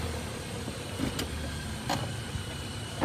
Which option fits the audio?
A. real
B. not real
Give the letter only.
A